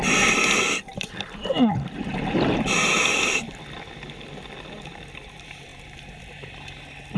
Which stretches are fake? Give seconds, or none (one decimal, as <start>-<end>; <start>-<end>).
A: 5.7-6.8